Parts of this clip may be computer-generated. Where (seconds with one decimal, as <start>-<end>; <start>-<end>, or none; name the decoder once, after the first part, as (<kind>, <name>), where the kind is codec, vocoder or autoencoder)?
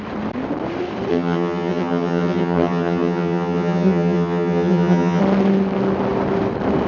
1.1-5.2 (vocoder, HiFi-GAN)